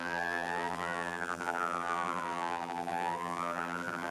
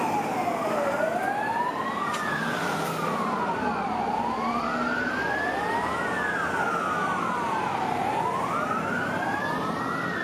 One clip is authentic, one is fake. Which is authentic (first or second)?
second